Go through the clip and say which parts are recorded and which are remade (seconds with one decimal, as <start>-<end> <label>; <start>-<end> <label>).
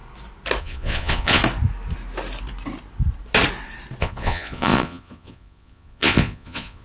0.0-0.6 recorded; 0.6-1.4 remade; 1.4-4.0 recorded; 4.0-6.8 remade